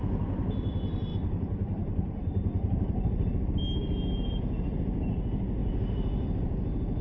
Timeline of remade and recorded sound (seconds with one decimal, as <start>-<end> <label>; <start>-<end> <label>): 0.0-1.1 recorded; 1.1-4.4 remade; 4.4-5.6 recorded; 5.6-7.0 remade